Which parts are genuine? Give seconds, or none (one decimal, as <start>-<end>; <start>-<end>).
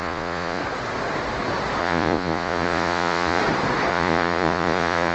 0.6-1.8; 3.4-3.9